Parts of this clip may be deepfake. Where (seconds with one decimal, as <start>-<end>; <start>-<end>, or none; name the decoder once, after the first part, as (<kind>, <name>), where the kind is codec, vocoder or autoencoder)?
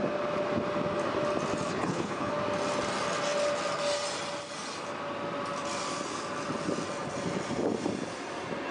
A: 1.7-2.3 (codec, HILCodec)